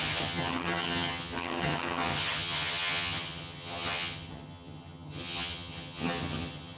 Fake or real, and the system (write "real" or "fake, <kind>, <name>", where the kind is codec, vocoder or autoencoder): fake, vocoder, HiFi-GAN